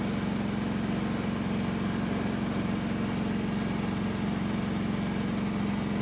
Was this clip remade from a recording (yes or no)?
no